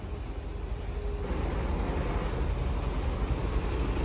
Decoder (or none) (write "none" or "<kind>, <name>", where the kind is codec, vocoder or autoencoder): none